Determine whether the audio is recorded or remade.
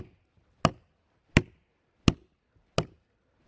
recorded